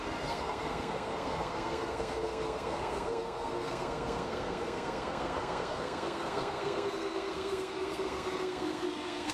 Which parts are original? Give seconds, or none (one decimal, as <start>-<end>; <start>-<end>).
none